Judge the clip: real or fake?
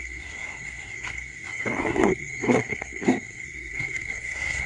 fake